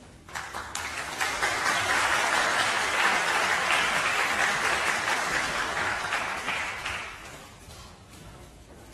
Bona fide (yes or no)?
no